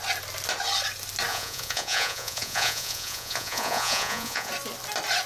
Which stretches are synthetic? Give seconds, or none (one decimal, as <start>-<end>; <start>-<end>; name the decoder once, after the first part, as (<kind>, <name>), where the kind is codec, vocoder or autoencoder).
1.3-4.5 (vocoder, Vocos)